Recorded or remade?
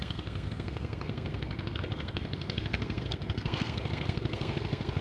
remade